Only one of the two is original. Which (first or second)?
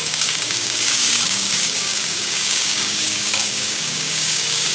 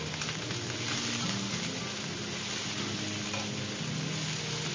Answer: second